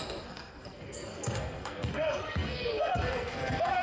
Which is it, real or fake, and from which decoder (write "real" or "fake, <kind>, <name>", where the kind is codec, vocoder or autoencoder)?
fake, codec, SNAC